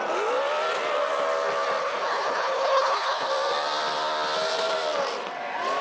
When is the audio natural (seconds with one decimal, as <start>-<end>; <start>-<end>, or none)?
0.0-1.8; 3.3-5.8

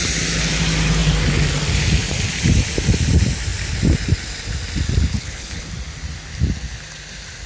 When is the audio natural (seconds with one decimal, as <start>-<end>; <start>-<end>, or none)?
0.0-5.1; 5.7-7.5

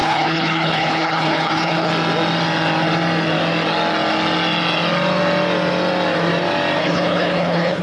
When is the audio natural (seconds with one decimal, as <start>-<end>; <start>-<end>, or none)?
1.9-6.8